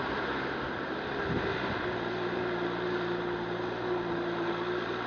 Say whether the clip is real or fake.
fake